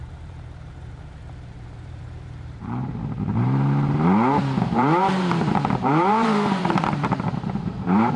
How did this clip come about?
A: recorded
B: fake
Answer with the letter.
B